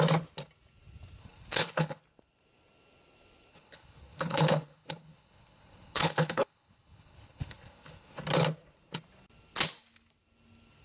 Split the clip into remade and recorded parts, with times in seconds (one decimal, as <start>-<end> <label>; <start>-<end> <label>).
0.0-1.2 recorded; 1.2-2.0 remade; 2.0-3.5 recorded; 3.5-8.2 remade; 8.2-10.8 recorded